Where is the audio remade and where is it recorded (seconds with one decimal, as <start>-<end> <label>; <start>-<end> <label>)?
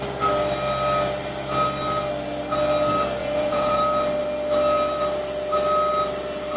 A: 0.0-3.2 recorded; 3.2-3.8 remade; 3.8-6.6 recorded